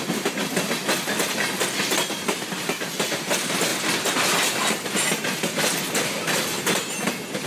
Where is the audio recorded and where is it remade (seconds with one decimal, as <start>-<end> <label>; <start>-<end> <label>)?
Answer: 0.0-3.7 recorded; 3.7-4.7 remade; 4.7-7.5 recorded